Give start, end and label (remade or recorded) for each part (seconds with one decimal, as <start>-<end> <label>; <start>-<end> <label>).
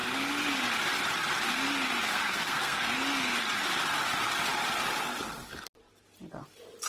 0.0-2.1 recorded; 2.1-2.9 remade; 2.9-6.9 recorded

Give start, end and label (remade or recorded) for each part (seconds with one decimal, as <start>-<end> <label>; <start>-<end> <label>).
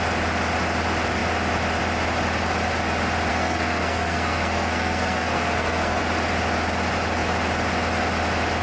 0.0-3.3 recorded; 3.3-6.0 remade; 6.0-8.6 recorded